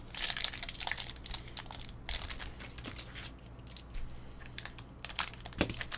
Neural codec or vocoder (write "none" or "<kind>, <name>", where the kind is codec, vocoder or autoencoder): none